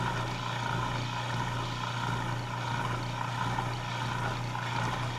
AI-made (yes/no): no